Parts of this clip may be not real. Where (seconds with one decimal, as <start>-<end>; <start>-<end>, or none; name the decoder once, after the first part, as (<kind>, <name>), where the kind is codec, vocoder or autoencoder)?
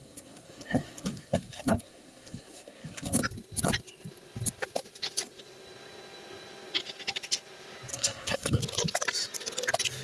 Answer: 0.0-3.2 (codec, SNAC); 7.9-8.6